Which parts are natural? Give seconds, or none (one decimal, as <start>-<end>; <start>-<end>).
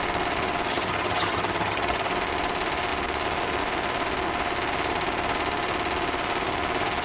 0.0-0.7; 2.1-7.0